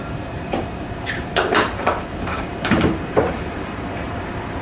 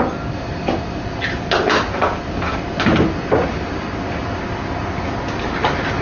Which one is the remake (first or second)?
first